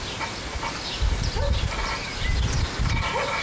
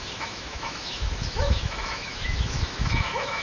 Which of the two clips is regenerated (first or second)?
second